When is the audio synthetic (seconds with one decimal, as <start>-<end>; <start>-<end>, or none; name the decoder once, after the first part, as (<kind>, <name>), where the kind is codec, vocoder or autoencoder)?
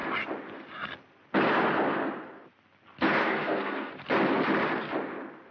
3.2-3.9 (codec, SNAC)